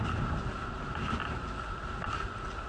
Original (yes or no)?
yes